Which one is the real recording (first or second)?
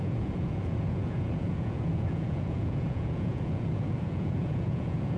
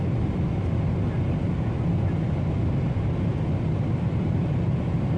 second